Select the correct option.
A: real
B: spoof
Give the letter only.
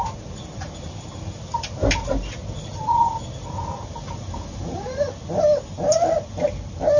A